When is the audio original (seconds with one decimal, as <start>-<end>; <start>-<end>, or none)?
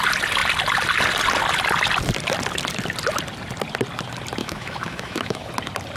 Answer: 0.0-4.4; 5.5-6.0